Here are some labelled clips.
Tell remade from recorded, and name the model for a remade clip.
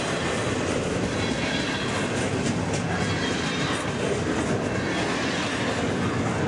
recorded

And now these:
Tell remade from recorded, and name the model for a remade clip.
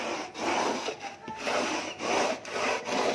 recorded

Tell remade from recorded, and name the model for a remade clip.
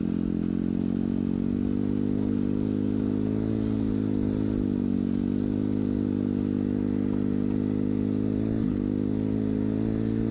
recorded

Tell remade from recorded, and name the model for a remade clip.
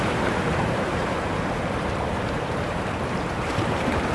remade, vocoder, BigVGAN v2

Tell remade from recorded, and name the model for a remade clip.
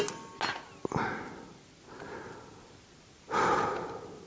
recorded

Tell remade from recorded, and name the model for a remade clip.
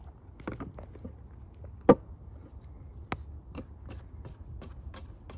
recorded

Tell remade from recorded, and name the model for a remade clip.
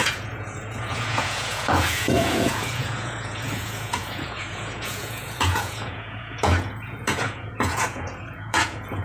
remade, vocoder, Vocos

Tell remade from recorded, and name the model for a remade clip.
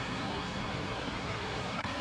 remade, codec, SNAC